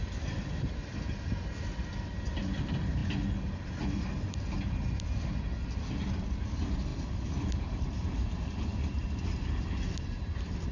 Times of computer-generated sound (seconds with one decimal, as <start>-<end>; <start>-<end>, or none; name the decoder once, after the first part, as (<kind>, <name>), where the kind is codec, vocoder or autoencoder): none